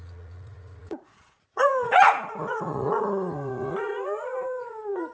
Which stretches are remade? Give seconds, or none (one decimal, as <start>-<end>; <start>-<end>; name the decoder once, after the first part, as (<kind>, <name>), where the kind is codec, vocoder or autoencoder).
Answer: 0.0-5.1 (vocoder, Vocos)